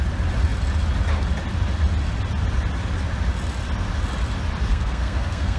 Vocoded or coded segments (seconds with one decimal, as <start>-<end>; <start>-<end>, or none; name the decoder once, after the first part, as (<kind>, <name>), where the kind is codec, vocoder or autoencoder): 4.7-5.6 (codec, SNAC)